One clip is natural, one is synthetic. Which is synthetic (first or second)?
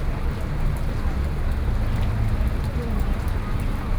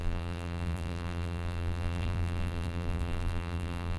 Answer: second